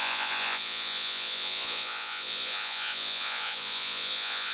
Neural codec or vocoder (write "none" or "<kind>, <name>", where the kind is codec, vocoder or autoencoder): vocoder, Vocos